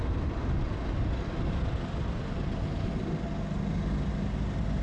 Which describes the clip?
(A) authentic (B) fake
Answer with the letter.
A